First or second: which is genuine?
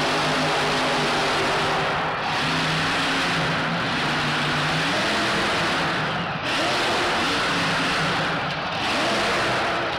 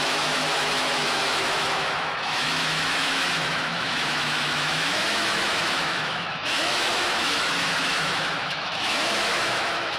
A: first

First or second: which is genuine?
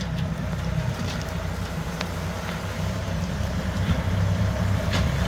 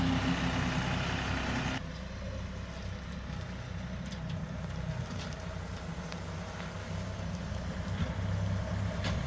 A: second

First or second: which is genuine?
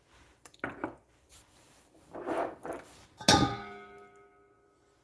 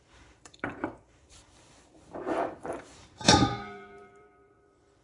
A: first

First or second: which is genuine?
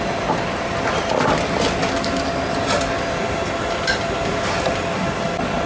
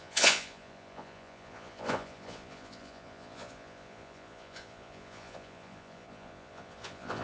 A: first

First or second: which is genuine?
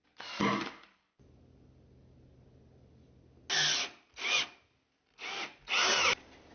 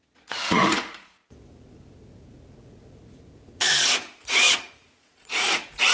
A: first